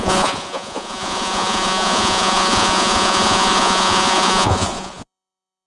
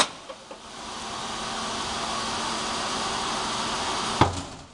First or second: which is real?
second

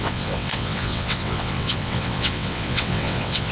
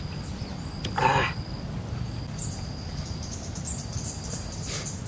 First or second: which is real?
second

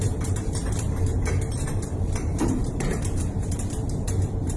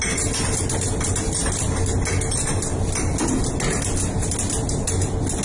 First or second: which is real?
second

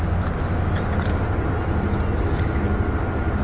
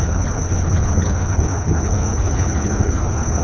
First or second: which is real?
first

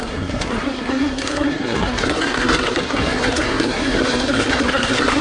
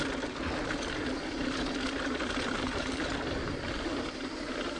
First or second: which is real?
second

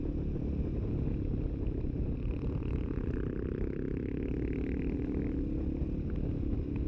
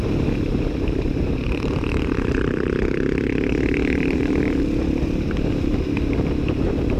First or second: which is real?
first